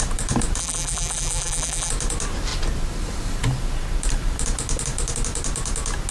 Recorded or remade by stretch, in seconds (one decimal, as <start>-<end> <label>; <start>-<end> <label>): 0.0-0.6 recorded; 0.6-1.9 remade; 1.9-6.1 recorded